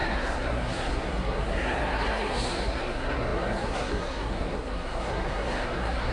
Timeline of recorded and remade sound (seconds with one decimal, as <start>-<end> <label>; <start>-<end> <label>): 0.0-6.1 remade